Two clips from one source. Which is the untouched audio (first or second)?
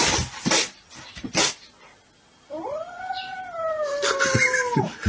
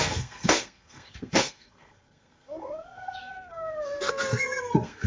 first